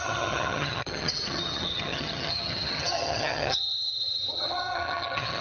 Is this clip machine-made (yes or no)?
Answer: yes